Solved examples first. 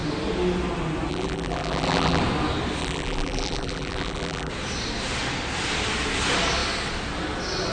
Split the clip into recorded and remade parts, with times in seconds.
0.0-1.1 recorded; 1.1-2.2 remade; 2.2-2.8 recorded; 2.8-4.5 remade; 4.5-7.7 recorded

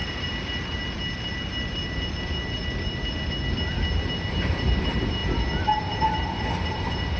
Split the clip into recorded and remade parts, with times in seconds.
0.0-4.3 recorded; 4.3-7.2 remade

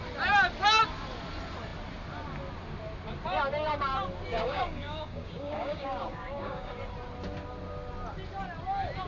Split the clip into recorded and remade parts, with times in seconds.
0.0-4.3 recorded; 4.3-6.7 remade; 6.7-9.1 recorded

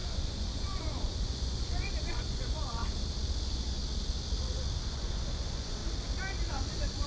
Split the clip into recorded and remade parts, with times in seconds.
0.0-2.8 remade; 2.8-3.4 recorded; 3.4-3.8 remade; 3.8-4.8 recorded; 4.8-5.8 remade; 5.8-6.5 recorded; 6.5-7.1 remade

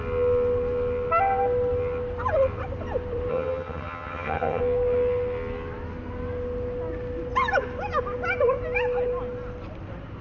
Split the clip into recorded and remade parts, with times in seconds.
0.0-3.3 recorded; 3.3-4.6 remade; 4.6-10.2 recorded

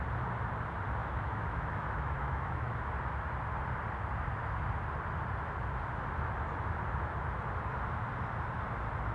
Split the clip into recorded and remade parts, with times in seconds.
0.0-1.0 recorded; 1.0-2.9 remade; 2.9-9.1 recorded

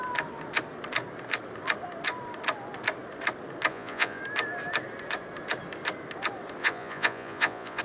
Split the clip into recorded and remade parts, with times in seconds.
0.0-3.7 recorded; 3.7-4.2 remade; 4.2-6.6 recorded; 6.6-7.8 remade